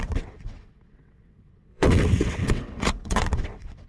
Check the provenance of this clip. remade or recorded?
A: remade